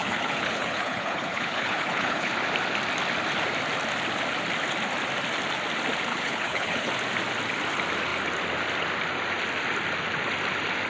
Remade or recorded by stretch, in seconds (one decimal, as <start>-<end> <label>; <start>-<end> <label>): 0.0-2.3 remade; 2.3-6.1 recorded; 6.1-6.9 remade; 6.9-10.9 recorded